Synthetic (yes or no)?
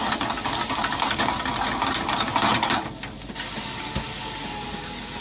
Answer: no